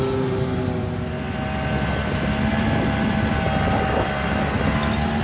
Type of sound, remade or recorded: recorded